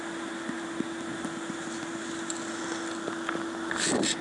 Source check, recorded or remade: recorded